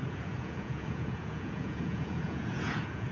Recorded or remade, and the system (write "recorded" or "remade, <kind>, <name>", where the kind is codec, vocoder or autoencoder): remade, vocoder, Vocos